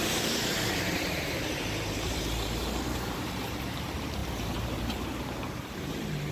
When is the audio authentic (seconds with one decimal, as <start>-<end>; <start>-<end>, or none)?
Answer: none